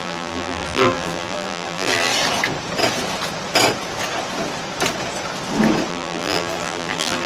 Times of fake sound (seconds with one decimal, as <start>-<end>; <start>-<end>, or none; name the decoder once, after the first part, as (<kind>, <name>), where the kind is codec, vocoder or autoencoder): 0.0-2.1 (vocoder, BigVGAN v2); 5.9-7.3